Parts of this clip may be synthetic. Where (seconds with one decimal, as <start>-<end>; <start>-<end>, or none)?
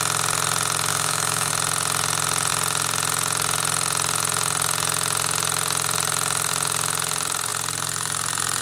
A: 0.9-1.5